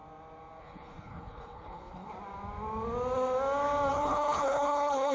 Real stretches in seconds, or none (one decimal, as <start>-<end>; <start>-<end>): 0.0-0.6; 2.1-3.9